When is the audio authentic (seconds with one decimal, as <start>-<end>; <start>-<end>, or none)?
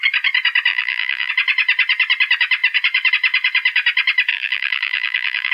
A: 0.0-0.7; 1.3-4.3